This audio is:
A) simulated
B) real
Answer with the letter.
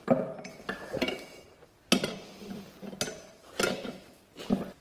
B